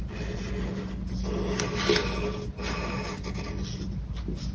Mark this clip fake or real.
real